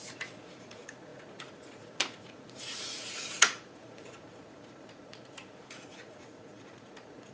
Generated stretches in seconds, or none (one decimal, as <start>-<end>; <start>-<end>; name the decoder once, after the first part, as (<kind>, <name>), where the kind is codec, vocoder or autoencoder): 0.0-7.3 (vocoder, Vocos)

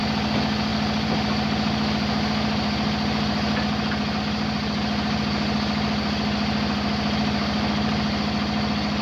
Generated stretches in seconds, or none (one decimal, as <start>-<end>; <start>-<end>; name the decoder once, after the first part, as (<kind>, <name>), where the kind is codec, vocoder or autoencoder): none

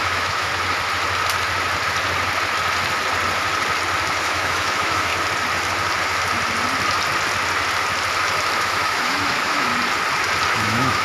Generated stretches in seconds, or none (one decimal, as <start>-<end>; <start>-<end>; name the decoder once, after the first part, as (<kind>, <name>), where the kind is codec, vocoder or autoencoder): 0.0-0.5 (autoencoder, DAC-VAE); 4.2-5.1; 8.6-9.7; 10.5-11.0

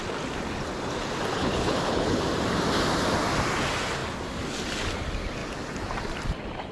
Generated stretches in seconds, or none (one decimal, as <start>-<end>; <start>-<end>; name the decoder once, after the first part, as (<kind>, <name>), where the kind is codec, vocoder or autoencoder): 1.3-2.2 (codec, HILCodec)